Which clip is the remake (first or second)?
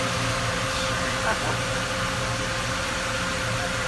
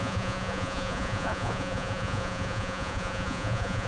second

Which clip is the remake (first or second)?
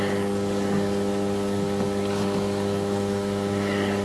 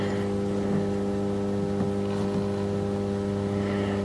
first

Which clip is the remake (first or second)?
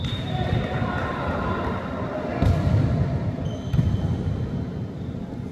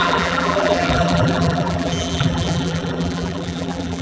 second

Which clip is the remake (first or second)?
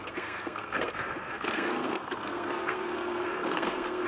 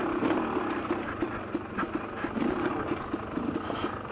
first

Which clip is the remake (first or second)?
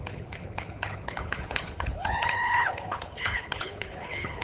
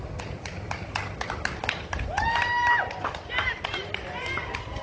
first